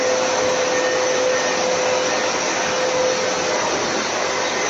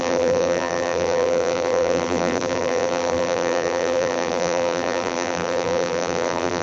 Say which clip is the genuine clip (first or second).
first